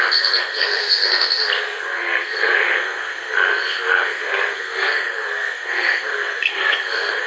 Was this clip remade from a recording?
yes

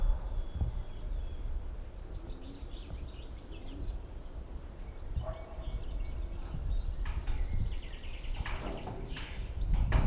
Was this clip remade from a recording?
no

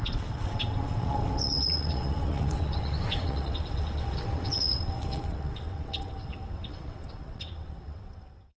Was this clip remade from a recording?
yes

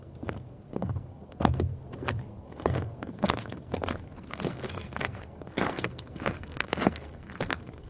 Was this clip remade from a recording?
yes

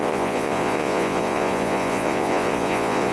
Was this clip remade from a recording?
yes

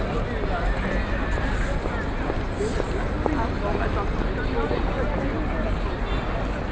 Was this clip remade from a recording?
no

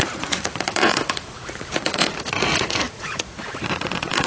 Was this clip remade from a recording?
yes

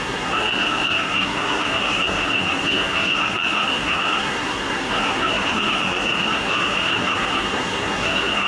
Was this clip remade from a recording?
yes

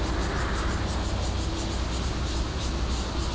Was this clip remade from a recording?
no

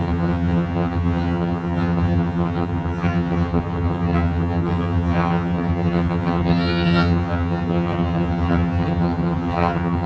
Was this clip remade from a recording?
yes